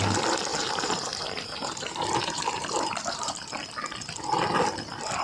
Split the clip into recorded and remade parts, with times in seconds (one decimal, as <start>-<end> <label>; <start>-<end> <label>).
0.0-0.5 recorded; 0.5-3.6 remade; 3.6-5.2 recorded